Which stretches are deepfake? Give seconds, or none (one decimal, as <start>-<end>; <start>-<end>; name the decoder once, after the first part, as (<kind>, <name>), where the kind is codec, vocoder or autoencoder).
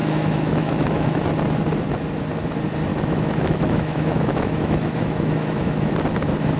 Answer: 0.0-1.2 (autoencoder, DAC-VAE); 2.9-5.9